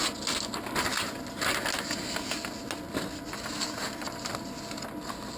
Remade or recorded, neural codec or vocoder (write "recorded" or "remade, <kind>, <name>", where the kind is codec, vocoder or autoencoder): recorded